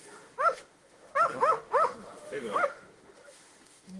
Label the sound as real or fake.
fake